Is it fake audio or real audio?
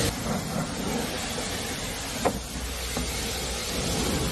real